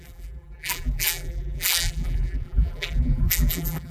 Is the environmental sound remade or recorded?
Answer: remade